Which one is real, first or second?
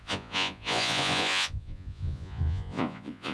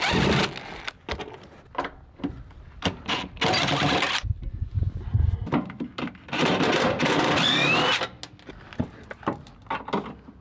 second